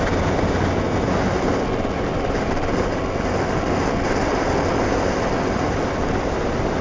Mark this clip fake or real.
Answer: real